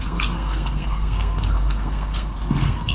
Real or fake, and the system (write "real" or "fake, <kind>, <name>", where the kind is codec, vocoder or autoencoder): fake, codec, SNAC